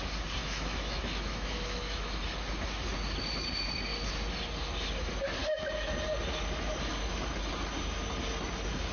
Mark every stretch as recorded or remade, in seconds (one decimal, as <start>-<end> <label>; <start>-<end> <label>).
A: 0.0-0.4 recorded; 0.4-2.2 remade; 2.2-8.9 recorded